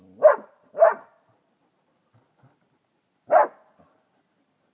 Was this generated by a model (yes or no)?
no